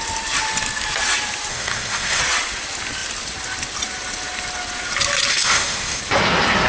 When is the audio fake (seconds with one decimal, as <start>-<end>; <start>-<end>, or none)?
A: 1.5-2.2; 5.3-6.0